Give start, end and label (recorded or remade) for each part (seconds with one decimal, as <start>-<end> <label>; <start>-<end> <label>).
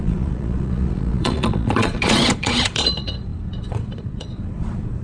0.0-5.0 remade